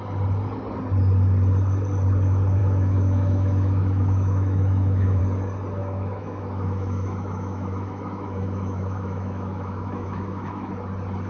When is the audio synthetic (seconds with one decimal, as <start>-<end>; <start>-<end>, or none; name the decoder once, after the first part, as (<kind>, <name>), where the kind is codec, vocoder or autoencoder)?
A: 2.6-5.2 (autoencoder, DAC-VAE); 5.8-10.7